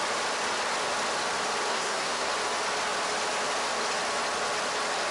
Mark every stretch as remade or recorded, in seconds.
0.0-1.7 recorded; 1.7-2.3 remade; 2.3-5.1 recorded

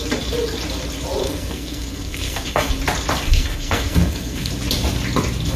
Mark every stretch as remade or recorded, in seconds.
0.0-1.2 recorded; 1.2-2.7 remade; 2.7-3.3 recorded; 3.3-4.5 remade; 4.5-5.6 recorded

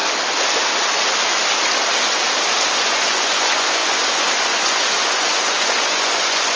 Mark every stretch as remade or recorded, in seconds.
0.0-2.7 recorded; 2.7-6.6 remade